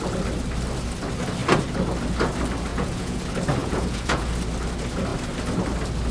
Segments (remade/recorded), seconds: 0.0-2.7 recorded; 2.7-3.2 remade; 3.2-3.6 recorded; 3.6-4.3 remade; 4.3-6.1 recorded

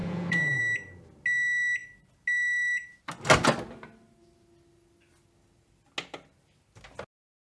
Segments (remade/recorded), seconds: 0.0-0.6 remade; 0.6-7.5 recorded

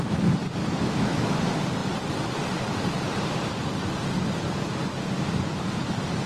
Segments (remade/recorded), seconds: 0.0-0.6 recorded; 0.6-1.4 remade; 1.4-6.3 recorded

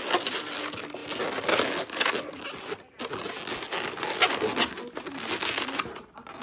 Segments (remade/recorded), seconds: 0.0-6.4 recorded

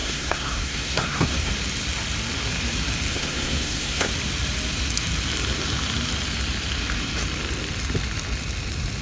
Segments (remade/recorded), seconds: 0.0-1.5 remade; 1.5-3.1 recorded; 3.1-4.1 remade; 4.1-9.0 recorded